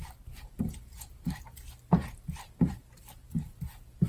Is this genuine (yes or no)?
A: yes